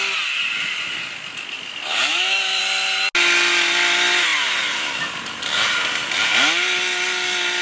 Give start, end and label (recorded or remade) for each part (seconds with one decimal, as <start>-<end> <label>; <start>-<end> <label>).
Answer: 0.0-2.1 recorded; 2.1-2.6 remade; 2.6-7.6 recorded